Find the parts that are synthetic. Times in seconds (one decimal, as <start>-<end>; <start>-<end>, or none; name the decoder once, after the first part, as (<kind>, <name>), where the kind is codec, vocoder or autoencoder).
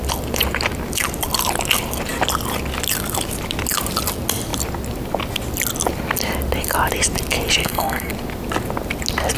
7.6-8.1 (codec, SNAC)